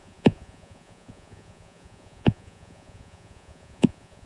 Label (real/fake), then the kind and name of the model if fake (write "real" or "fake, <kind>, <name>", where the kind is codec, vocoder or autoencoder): fake, vocoder, Vocos